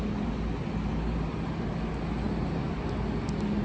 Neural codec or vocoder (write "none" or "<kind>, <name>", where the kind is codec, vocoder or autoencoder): none